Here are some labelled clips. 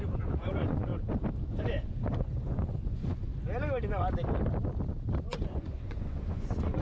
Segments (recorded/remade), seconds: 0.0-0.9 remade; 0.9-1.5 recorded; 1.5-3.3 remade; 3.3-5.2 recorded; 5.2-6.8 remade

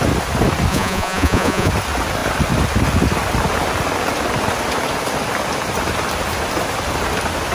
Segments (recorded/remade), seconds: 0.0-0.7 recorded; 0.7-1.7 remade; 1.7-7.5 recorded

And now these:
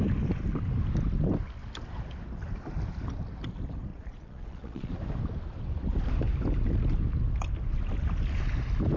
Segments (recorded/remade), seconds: 0.0-3.9 recorded; 3.9-4.9 remade; 4.9-9.0 recorded

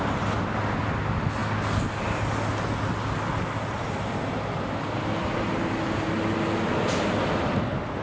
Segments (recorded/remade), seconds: 0.0-8.0 recorded

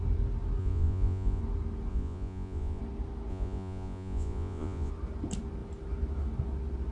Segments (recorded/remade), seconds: 0.0-0.6 recorded; 0.6-1.4 remade; 1.4-1.9 recorded; 1.9-2.8 remade; 2.8-3.3 recorded; 3.3-4.9 remade; 4.9-6.9 recorded

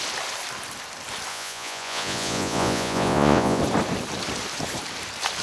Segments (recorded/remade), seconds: 0.0-1.3 recorded; 1.3-3.6 remade; 3.6-5.4 recorded